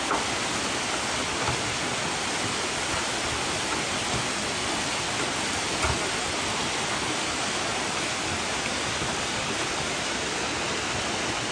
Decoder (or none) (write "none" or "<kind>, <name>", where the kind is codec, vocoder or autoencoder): none